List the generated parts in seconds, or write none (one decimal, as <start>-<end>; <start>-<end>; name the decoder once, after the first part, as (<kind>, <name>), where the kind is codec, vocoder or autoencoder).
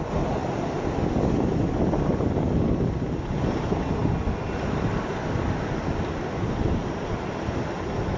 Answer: none